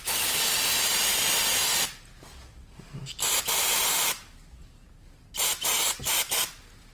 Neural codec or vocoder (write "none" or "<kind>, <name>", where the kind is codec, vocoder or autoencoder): none